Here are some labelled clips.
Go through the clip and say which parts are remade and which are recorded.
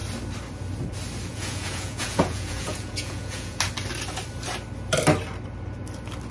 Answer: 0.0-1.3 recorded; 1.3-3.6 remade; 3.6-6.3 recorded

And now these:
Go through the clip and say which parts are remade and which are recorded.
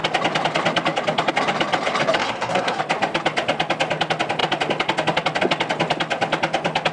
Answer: 0.0-2.2 recorded; 2.2-2.8 remade; 2.8-6.9 recorded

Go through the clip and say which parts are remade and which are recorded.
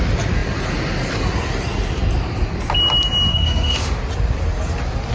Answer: 0.0-3.3 recorded; 3.3-4.0 remade; 4.0-5.1 recorded